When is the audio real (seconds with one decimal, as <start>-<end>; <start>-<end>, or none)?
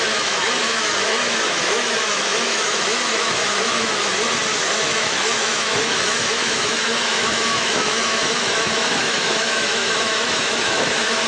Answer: 4.1-4.7